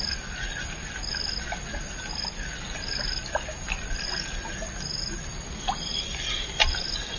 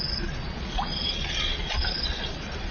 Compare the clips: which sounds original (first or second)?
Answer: first